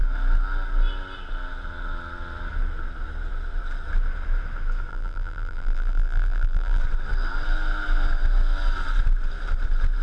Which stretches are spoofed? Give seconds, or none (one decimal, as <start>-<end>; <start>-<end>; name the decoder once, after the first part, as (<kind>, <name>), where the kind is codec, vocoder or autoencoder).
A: 4.9-6.8 (vocoder, BigVGAN v2)